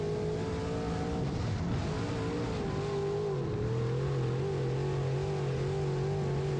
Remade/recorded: recorded